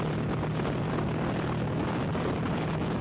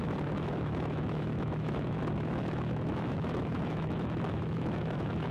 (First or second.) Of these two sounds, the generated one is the second